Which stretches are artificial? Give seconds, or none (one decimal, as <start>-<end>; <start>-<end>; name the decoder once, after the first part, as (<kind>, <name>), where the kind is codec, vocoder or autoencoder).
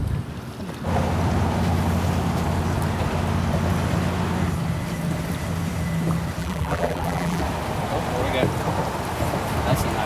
6.4-7.4 (vocoder, BigVGAN v2)